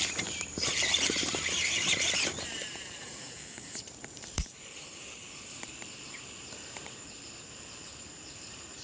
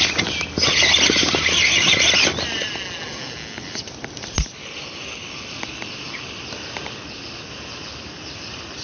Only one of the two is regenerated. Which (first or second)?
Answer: first